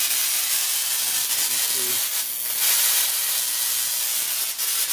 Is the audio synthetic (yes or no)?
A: no